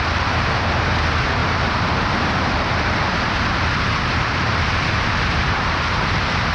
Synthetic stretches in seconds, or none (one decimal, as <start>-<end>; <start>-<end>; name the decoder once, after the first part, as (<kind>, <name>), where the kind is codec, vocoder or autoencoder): 0.0-6.5 (vocoder, BigVGAN v2)